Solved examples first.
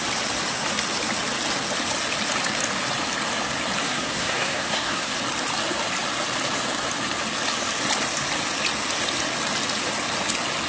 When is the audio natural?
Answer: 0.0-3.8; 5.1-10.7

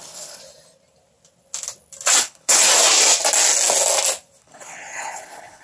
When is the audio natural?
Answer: 0.4-2.2; 2.6-4.4

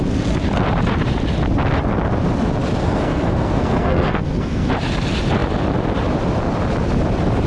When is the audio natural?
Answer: 0.0-2.8; 4.7-7.5

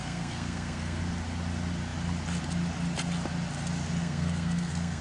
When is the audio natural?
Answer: 1.0-4.0